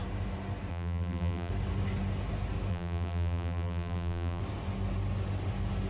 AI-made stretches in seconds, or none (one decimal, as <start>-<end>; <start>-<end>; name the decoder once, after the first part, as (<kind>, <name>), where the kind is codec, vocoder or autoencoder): 0.7-1.5 (vocoder, BigVGAN v2); 2.7-4.4